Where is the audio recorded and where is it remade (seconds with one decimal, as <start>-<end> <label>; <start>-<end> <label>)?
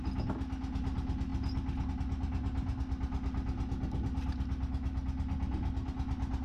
0.0-6.4 recorded